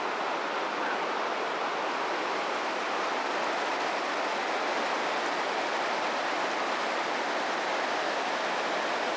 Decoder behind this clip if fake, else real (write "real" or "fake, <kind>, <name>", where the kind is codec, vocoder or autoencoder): real